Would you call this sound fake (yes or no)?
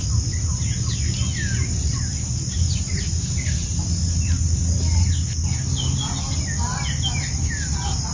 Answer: no